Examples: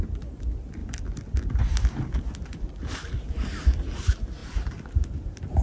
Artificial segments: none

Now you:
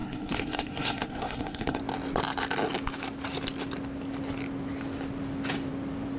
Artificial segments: 0.0-1.8 (codec, SNAC)

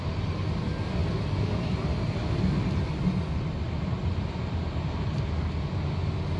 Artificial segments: none

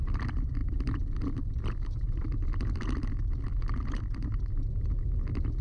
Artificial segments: none

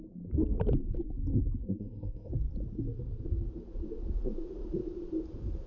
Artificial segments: 1.6-2.3 (codec, SNAC)